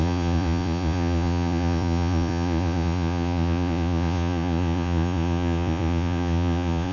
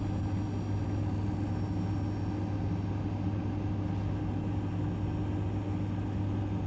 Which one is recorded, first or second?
second